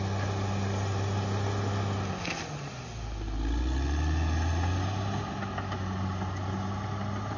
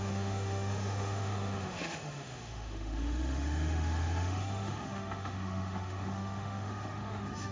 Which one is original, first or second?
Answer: first